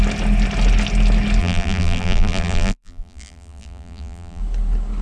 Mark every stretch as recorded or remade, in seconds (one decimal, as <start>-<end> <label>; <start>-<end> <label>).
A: 0.0-1.4 recorded; 1.4-4.4 remade; 4.4-5.0 recorded